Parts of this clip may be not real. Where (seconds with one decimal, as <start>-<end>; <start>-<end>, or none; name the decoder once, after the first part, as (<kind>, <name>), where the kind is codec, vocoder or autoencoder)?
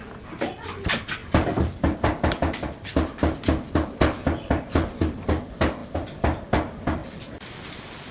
none